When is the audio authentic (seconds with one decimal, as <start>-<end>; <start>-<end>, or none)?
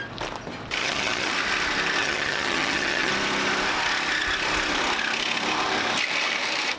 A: 0.0-0.8; 1.3-2.0; 3.1-6.8